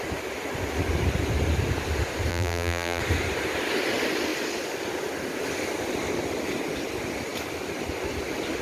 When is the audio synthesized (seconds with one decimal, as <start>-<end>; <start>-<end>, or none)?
2.3-3.0